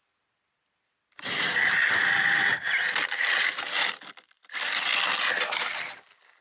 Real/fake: real